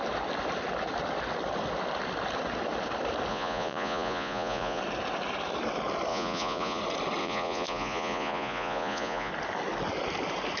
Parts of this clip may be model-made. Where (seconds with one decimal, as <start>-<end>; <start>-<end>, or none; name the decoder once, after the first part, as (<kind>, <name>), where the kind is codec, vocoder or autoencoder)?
3.3-4.8 (vocoder, Vocos); 6.1-6.8; 7.2-9.3